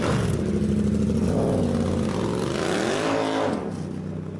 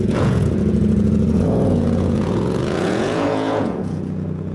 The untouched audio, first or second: first